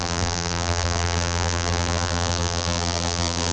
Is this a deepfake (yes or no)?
yes